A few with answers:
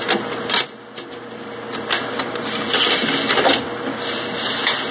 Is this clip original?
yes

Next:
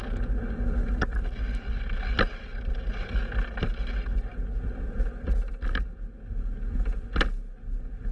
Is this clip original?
yes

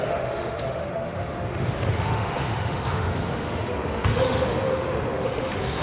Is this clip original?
no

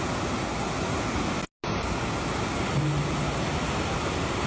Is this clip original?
yes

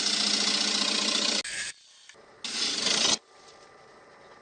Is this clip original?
yes